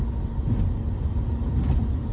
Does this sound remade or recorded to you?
recorded